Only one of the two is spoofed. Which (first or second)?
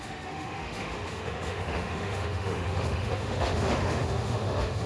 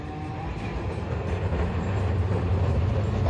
first